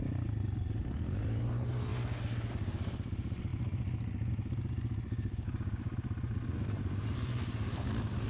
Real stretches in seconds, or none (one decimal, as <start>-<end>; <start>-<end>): 0.0-5.1; 5.9-8.3